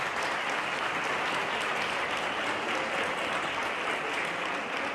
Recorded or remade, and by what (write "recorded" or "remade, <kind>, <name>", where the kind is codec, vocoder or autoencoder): recorded